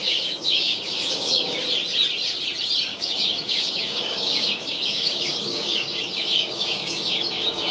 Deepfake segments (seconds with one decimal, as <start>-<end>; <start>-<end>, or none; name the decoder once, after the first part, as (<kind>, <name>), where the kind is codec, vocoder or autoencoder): 0.0-1.6 (codec, DAC); 2.9-7.7